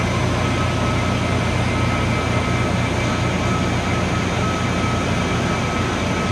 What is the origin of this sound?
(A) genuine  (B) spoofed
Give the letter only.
A